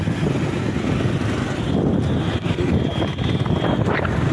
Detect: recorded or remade recorded